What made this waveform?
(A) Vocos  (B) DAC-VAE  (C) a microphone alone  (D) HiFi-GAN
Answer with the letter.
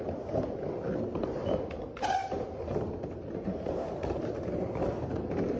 C